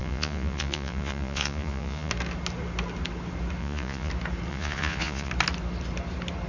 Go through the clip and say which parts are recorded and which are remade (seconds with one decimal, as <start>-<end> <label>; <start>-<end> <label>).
0.0-2.1 remade; 2.1-3.6 recorded; 3.6-4.1 remade; 4.1-4.5 recorded; 4.5-5.3 remade; 5.3-6.5 recorded